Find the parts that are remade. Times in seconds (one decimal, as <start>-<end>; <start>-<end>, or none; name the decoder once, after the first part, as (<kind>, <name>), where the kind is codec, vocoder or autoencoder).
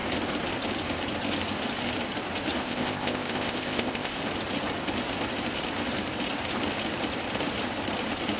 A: 2.6-4.2 (codec, ZipCodec)